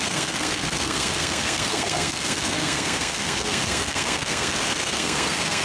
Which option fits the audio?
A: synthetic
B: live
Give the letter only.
A